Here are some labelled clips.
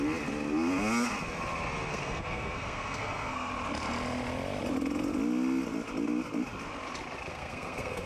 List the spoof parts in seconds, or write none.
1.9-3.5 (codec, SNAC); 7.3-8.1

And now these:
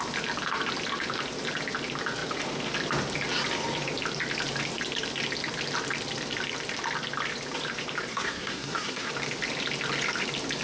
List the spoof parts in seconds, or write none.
8.1-9.1 (codec, SNAC)

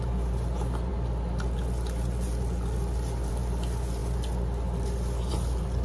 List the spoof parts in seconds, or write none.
none

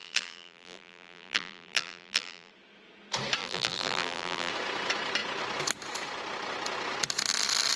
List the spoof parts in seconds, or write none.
0.0-2.5 (vocoder, BigVGAN v2); 3.4-4.5